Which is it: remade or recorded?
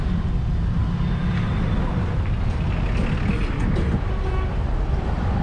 recorded